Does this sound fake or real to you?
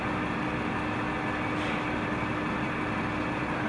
real